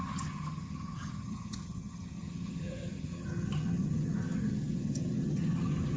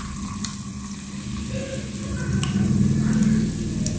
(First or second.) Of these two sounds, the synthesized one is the first